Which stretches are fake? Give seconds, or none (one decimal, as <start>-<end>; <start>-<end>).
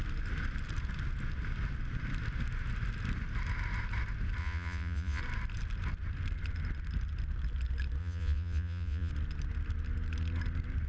4.4-5.2; 8.0-9.1